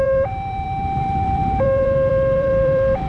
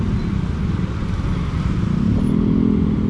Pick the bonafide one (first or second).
second